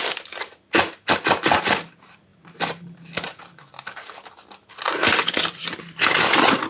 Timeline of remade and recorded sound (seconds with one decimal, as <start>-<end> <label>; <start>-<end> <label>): 0.0-6.7 recorded